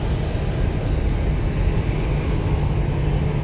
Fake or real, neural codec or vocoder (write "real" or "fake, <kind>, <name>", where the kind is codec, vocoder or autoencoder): real